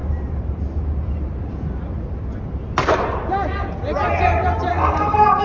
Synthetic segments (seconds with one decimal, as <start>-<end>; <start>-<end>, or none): 4.7-5.4